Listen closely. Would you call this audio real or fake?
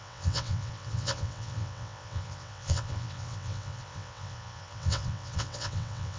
fake